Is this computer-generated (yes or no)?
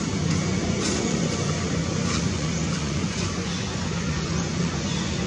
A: yes